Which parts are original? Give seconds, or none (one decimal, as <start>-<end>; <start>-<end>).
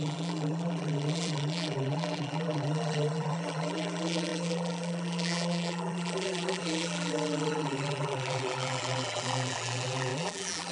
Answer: none